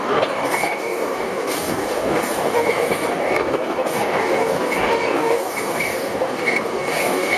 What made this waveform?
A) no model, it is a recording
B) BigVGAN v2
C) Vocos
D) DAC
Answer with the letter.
D